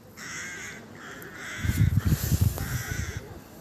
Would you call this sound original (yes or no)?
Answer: yes